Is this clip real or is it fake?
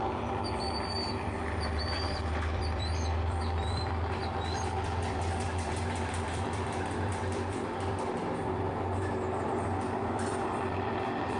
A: fake